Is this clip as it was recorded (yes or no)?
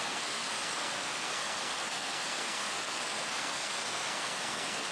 no